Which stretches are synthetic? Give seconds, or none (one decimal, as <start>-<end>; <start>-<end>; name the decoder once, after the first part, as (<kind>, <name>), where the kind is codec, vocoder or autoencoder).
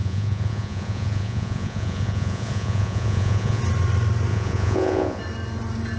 0.0-3.6 (vocoder, Vocos); 4.3-5.2